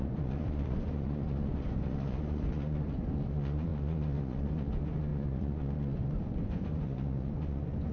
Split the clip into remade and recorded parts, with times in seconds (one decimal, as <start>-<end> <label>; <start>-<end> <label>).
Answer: 0.0-7.9 remade